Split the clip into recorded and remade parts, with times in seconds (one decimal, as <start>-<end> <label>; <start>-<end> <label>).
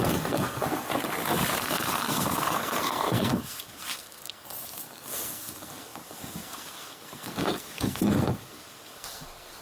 0.0-0.9 remade; 0.9-1.6 recorded; 1.6-9.6 remade